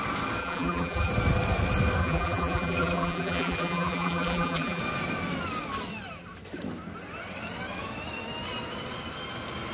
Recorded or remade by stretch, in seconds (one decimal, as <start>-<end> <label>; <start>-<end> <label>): 0.0-0.4 recorded; 0.4-1.1 remade; 1.1-2.0 recorded; 2.0-4.8 remade; 4.8-9.7 recorded